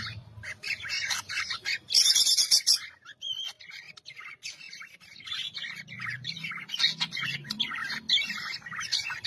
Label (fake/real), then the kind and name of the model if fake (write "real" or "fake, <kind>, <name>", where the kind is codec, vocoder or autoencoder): real